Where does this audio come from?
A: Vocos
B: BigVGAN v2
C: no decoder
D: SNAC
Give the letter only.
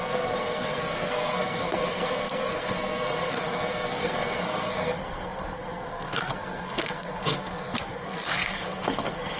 D